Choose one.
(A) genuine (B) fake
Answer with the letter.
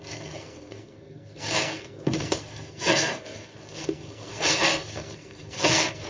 B